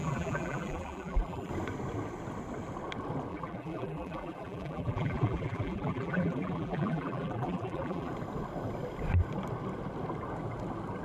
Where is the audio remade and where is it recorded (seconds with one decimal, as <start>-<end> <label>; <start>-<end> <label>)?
0.0-1.5 remade; 1.5-3.3 recorded; 3.3-8.1 remade; 8.1-11.0 recorded